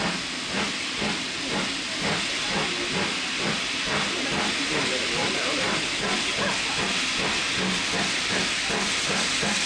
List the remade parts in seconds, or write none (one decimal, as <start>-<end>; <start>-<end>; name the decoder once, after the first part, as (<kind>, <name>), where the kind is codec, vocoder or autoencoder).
5.2-5.9 (vocoder, BigVGAN v2)